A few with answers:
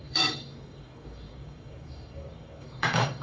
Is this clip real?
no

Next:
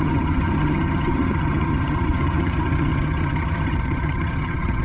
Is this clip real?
no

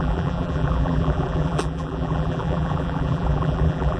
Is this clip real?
no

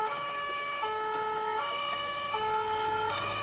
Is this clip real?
no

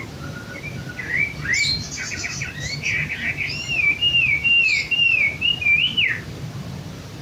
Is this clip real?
no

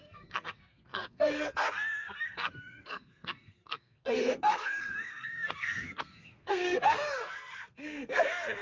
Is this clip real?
no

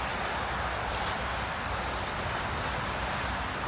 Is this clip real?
yes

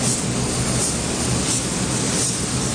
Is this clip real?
yes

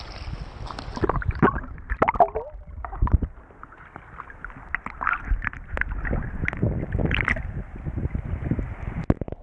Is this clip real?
yes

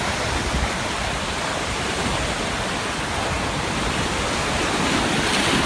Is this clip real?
yes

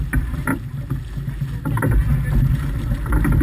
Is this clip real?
yes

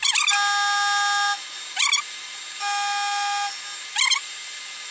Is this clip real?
yes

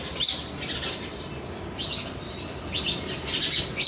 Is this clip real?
yes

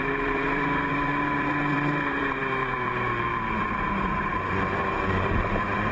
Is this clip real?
no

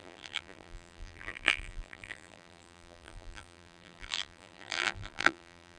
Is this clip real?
no